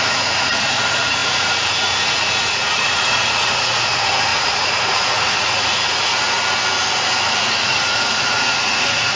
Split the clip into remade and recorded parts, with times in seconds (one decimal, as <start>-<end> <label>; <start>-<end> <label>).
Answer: 0.0-6.1 remade; 6.1-7.4 recorded; 7.4-9.2 remade

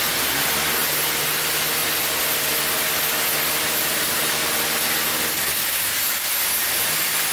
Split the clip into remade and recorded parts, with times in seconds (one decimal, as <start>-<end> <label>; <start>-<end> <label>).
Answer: 0.0-5.1 recorded; 5.1-6.3 remade; 6.3-7.3 recorded

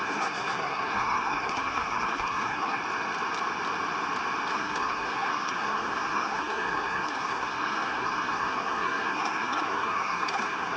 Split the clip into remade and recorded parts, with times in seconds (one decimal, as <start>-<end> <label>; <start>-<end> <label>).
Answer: 0.0-2.8 remade; 2.8-4.5 recorded; 4.5-10.8 remade

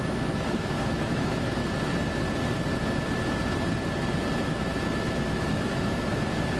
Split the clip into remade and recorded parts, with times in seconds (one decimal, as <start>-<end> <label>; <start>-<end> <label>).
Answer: 0.0-1.6 remade; 1.6-4.4 recorded; 4.4-6.6 remade

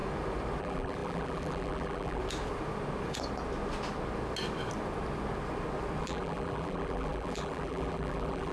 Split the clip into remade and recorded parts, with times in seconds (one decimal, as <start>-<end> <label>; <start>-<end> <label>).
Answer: 0.0-0.6 recorded; 0.6-2.2 remade; 2.2-6.0 recorded; 6.0-8.5 remade

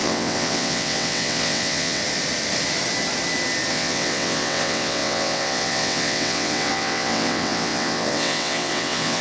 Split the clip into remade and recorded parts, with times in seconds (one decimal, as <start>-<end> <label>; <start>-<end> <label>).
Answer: 0.0-2.0 remade; 2.0-3.7 recorded; 3.7-9.2 remade